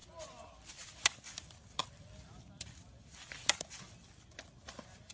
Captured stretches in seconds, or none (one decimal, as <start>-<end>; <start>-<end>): 0.0-0.7